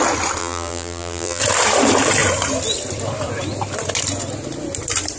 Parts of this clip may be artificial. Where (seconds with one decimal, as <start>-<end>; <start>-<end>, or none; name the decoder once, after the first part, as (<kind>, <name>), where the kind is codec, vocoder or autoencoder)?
0.4-1.4 (vocoder, BigVGAN v2)